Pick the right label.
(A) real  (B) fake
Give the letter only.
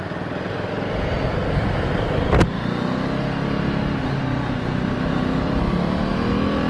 A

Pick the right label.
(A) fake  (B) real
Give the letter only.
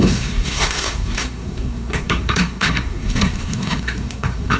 A